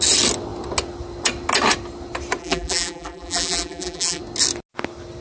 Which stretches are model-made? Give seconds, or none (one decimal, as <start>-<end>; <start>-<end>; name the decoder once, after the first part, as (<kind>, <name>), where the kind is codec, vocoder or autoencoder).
2.4-4.2 (vocoder, BigVGAN v2)